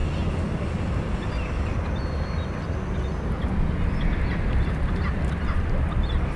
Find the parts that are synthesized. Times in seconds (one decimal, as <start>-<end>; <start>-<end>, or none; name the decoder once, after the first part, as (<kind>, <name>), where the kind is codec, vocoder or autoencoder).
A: none